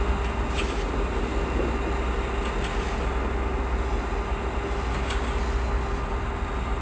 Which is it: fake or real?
real